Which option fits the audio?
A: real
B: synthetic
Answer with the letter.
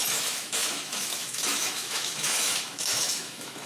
B